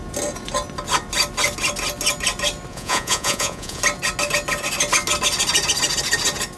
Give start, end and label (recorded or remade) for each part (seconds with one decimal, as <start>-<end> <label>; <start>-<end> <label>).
0.0-2.7 recorded; 2.7-3.8 remade; 3.8-6.6 recorded